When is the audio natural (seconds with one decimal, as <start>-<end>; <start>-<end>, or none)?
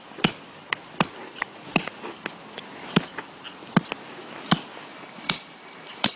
0.0-4.9